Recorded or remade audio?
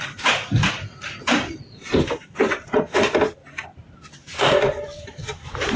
remade